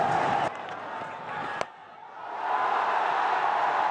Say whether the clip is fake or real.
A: real